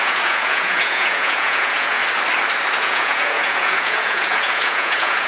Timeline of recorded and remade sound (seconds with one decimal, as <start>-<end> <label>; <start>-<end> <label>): 0.0-2.0 remade; 2.0-2.8 recorded; 2.8-5.3 remade